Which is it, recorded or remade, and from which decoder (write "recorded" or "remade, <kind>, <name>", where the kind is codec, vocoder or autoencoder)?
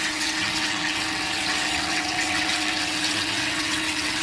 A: remade, vocoder, WaveNeXt